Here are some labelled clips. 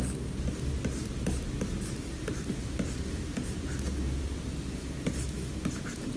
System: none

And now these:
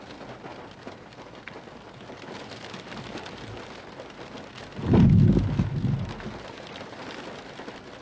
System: none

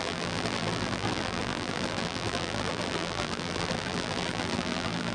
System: vocoder, BigVGAN v2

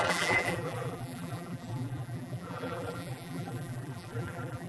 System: vocoder, BigVGAN v2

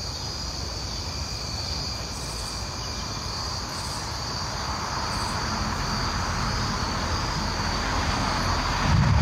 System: none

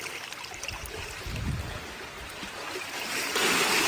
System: vocoder, BigVGAN v2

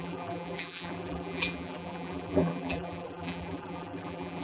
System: vocoder, BigVGAN v2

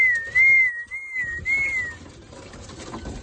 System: none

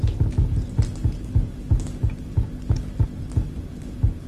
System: none